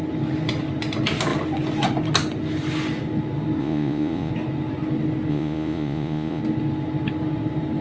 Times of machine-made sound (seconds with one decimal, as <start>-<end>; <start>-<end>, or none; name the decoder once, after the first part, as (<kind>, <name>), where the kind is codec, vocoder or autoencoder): 3.6-4.3 (vocoder, Vocos); 5.3-6.4